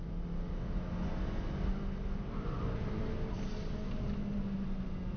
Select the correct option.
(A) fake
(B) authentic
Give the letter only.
B